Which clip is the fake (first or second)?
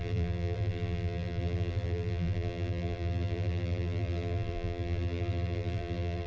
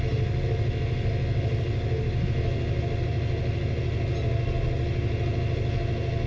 first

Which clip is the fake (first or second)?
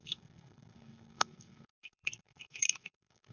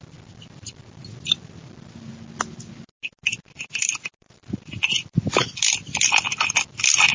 first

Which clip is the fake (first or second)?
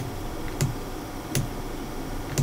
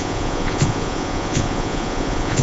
second